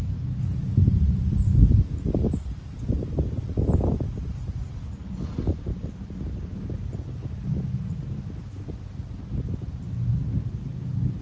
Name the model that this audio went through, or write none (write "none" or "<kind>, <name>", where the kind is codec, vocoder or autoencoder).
none